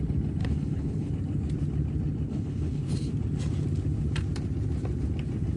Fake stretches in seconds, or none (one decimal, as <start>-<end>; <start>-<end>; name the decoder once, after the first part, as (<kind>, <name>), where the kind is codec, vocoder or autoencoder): 0.4-1.1 (codec, HILCodec); 2.3-3.1

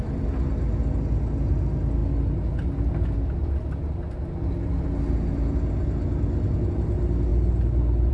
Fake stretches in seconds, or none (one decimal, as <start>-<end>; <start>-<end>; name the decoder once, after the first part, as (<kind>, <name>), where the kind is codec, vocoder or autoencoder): none

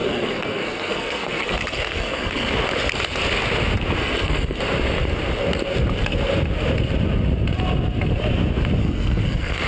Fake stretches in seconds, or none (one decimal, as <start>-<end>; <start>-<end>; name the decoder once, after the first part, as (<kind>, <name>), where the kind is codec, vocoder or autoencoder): 0.0-2.5 (codec, SNAC); 4.0-4.6; 8.8-9.7

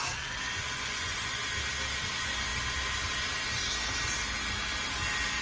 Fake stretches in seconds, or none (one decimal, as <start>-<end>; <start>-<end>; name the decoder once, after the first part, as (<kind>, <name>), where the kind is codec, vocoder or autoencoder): 0.0-1.4 (vocoder, Vocos); 2.1-2.5

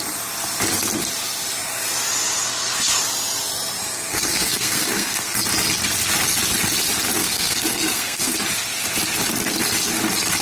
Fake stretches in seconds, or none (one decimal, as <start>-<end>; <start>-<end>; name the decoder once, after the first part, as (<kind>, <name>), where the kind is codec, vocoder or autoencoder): 3.8-5.4 (codec, SNAC); 7.2-8.3

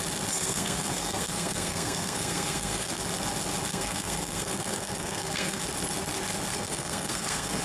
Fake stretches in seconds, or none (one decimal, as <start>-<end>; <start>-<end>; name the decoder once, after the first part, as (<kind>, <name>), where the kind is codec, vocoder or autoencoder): 0.4-3.0 (codec, SNAC); 3.7-5.6; 6.5-7.6